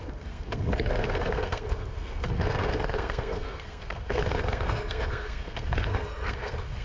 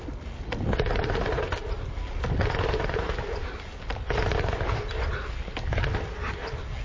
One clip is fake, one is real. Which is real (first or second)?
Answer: second